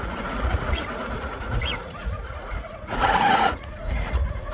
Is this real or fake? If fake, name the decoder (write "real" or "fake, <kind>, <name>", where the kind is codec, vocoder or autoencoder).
fake, vocoder, Vocos